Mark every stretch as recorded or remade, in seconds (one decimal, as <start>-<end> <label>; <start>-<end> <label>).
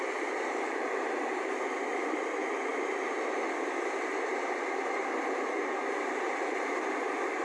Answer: 0.0-2.7 remade; 2.7-4.2 recorded; 4.2-7.4 remade